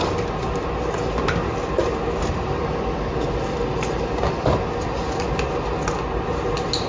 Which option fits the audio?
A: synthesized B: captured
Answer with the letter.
B